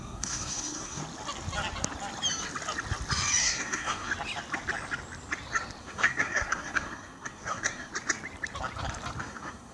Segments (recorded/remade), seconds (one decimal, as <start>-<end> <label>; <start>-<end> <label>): 0.0-1.0 remade; 1.0-3.4 recorded; 3.4-4.1 remade; 4.1-5.8 recorded; 5.8-7.9 remade; 7.9-9.2 recorded; 9.2-9.7 remade